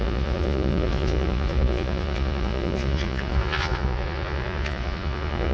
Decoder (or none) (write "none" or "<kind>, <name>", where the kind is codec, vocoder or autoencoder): vocoder, Vocos